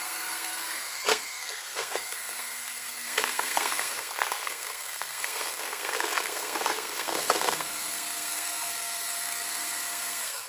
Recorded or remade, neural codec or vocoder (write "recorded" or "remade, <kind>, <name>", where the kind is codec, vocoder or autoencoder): remade, codec, SNAC